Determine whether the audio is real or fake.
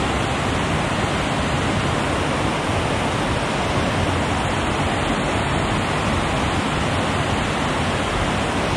real